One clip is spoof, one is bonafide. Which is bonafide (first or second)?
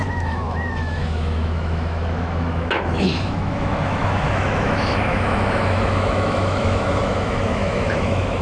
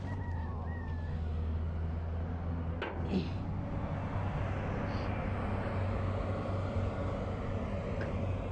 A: second